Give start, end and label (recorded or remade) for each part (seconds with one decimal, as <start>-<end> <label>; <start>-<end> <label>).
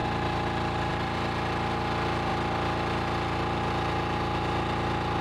0.0-5.2 recorded